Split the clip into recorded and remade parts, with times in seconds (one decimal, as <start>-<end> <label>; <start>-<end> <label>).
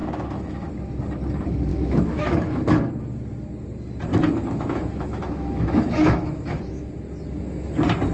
0.0-0.7 remade; 0.7-1.7 recorded; 1.7-2.9 remade; 2.9-4.1 recorded; 4.1-6.9 remade; 6.9-8.1 recorded